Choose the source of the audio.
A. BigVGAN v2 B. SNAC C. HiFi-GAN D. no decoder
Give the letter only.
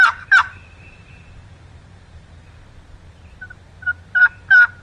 A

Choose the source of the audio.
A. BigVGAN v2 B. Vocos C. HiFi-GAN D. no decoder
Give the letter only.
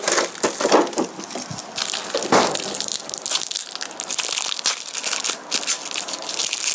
D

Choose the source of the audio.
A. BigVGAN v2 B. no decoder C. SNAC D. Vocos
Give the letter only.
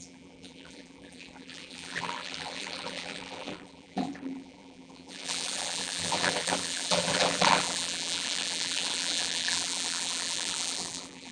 A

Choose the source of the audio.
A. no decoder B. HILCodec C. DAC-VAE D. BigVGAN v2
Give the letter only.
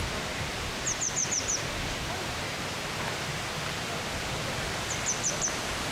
A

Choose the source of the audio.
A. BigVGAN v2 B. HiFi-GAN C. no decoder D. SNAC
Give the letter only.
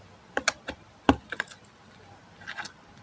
C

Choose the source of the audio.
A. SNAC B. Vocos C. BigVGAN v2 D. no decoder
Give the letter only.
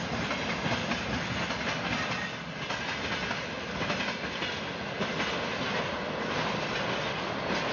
D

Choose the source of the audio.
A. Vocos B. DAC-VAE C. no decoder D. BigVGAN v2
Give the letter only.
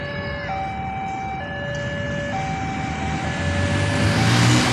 C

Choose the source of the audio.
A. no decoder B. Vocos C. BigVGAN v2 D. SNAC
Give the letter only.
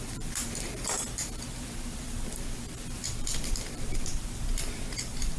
C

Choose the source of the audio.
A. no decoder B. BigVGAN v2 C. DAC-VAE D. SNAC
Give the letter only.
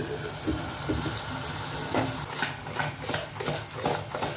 A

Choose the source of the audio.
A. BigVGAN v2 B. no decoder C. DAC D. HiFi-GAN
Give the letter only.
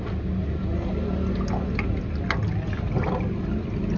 B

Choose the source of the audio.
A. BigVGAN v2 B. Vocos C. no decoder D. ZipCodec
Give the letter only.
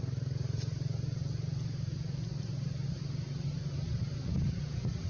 C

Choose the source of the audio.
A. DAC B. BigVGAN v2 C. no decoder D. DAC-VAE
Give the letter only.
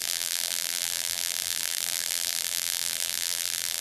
B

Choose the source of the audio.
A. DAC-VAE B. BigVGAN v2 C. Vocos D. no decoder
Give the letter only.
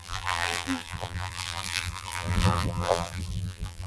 B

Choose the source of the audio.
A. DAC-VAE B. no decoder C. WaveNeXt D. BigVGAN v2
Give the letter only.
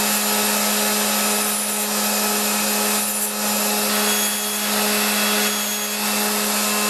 B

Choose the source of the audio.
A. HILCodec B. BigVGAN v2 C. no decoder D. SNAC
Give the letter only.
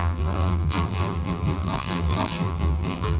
B